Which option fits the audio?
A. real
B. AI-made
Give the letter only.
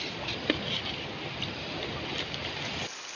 A